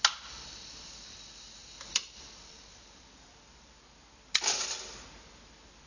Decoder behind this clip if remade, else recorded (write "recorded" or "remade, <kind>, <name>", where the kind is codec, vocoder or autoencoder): recorded